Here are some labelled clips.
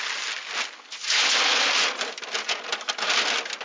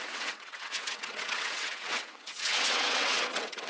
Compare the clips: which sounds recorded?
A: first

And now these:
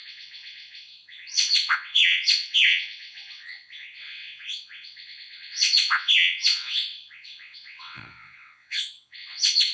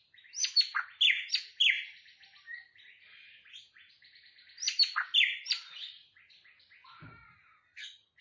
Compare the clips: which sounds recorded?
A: second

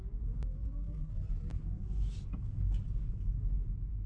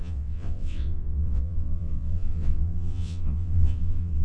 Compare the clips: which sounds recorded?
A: first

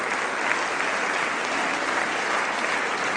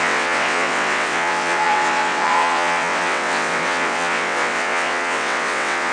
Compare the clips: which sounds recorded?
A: first